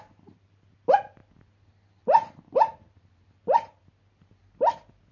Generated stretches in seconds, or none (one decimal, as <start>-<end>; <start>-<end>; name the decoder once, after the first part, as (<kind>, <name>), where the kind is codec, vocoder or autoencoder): none